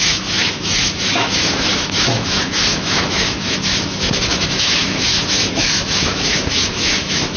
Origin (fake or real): fake